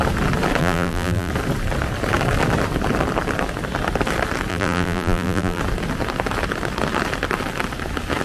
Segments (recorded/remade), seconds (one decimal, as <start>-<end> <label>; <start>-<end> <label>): 0.0-0.6 recorded; 0.6-1.3 remade; 1.3-4.5 recorded; 4.5-5.6 remade; 5.6-8.2 recorded